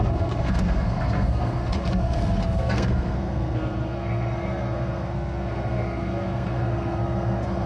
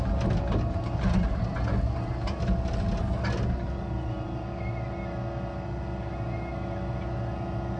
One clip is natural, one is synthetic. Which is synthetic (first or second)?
first